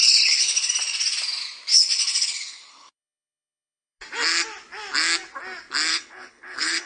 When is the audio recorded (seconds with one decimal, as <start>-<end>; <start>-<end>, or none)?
0.7-1.7; 4.0-5.9

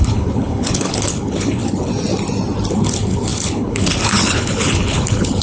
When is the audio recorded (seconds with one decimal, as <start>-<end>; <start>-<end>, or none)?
1.9-2.7

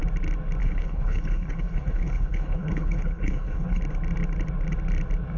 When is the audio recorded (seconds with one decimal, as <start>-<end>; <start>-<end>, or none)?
0.0-0.6; 3.8-5.4

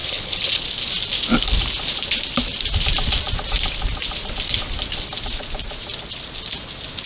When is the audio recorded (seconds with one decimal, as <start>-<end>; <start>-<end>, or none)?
0.6-7.1